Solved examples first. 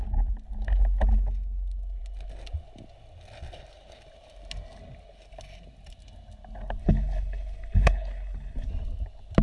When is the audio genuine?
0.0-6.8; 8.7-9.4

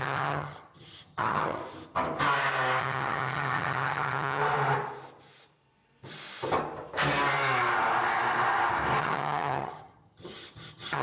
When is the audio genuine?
1.6-2.8; 4.4-9.0

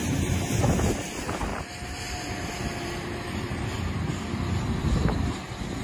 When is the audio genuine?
0.0-5.8

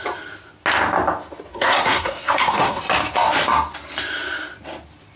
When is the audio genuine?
0.0-1.5; 2.8-5.2

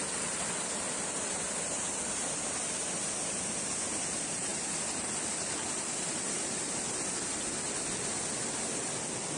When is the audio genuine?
0.0-9.4

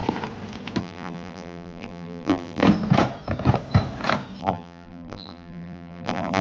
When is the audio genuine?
0.0-0.8; 2.6-4.4

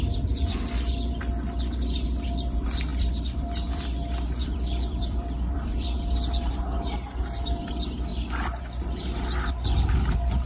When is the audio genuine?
0.0-2.9; 7.6-8.1; 8.6-10.5

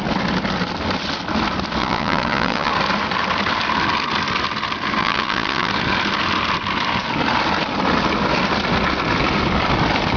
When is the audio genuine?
0.0-1.8; 2.7-5.0; 5.7-10.2